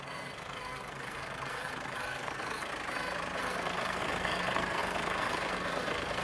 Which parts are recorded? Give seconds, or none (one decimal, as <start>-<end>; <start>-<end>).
2.7-3.4